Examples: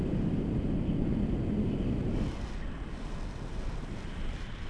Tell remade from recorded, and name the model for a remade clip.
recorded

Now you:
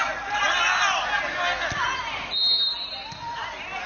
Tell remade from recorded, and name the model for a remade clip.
recorded